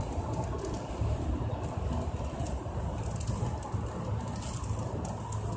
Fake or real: real